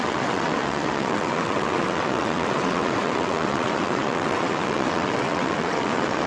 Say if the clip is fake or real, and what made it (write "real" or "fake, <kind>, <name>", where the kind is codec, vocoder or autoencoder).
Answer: fake, vocoder, WaveNeXt